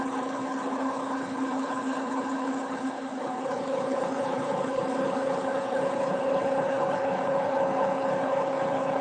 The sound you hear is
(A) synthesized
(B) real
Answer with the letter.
A